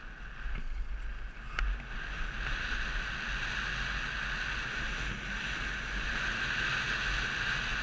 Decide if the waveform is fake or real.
real